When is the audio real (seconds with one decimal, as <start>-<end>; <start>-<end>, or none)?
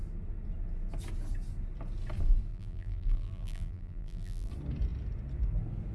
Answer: 0.0-2.5; 4.5-5.9